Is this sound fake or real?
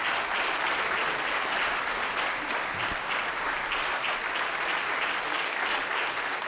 real